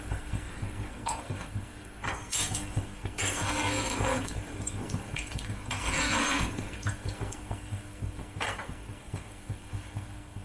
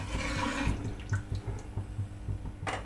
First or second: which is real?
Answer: second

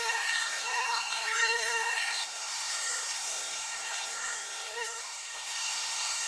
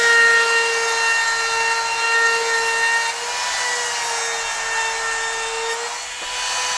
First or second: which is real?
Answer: second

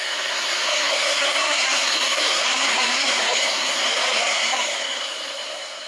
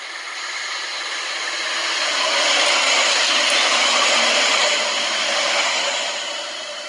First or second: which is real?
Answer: second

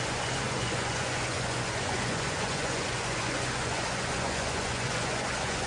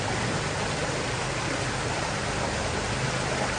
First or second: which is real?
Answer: second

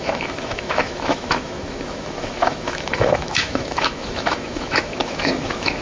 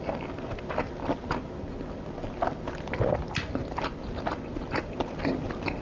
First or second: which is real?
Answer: second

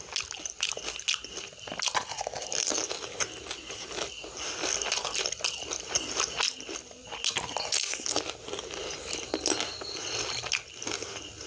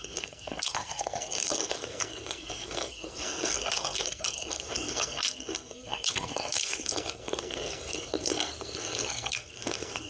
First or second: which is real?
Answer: first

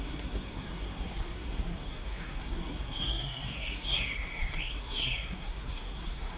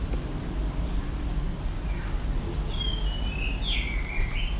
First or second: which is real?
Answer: second